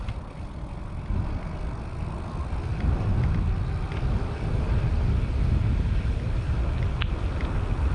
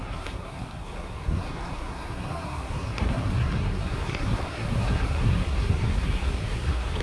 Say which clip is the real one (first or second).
first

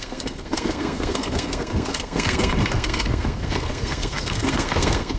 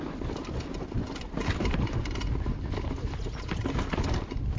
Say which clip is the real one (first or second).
second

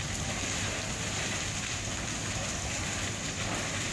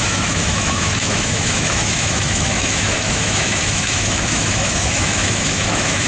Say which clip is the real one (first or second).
first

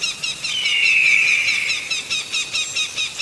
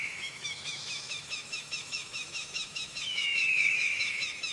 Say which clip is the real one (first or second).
first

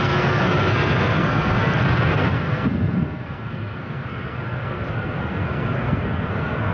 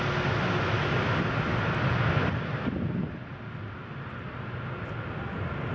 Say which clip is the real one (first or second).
second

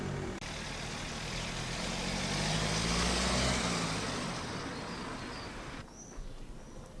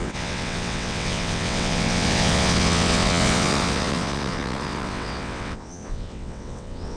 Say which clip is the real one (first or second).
first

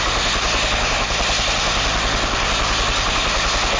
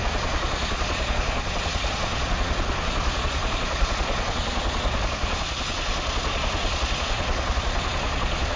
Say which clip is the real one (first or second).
first